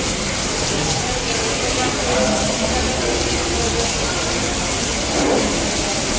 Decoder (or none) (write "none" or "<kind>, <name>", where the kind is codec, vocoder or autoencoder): none